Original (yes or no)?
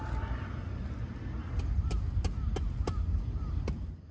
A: yes